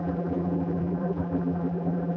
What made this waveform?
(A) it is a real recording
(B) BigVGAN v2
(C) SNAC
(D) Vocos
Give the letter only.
B